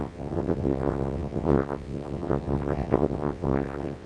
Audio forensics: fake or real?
fake